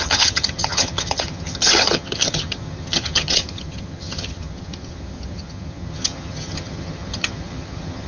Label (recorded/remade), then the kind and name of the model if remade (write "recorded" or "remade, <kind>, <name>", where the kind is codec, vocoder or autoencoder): remade, vocoder, HiFi-GAN